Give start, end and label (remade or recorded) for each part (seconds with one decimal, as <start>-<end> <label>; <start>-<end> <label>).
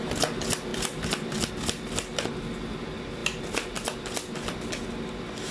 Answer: 0.0-0.7 recorded; 0.7-1.5 remade; 1.5-3.2 recorded; 3.2-4.6 remade; 4.6-5.5 recorded